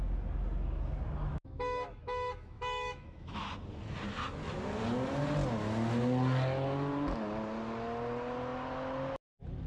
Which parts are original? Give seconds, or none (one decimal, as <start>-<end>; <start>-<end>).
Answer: 0.0-1.3; 3.4-9.7